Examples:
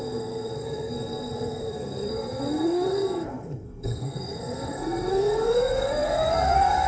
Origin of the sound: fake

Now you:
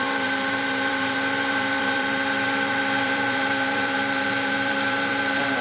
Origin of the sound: fake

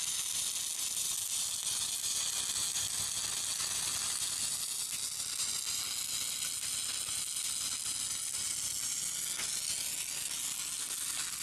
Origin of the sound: real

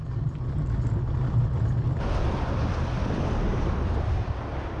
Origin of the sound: real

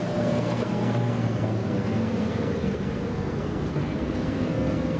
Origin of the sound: fake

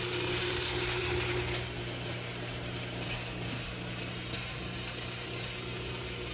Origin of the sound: real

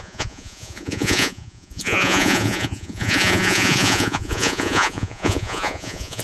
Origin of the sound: fake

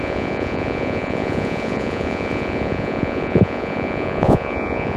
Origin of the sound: fake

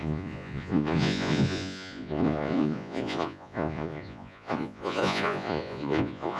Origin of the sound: fake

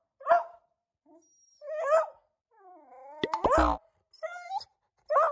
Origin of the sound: real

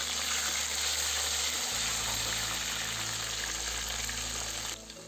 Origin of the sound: real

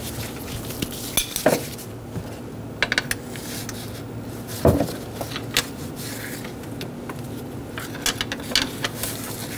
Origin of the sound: real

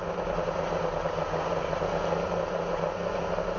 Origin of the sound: real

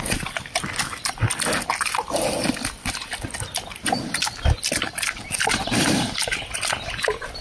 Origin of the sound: real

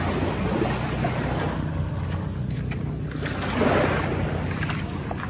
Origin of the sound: real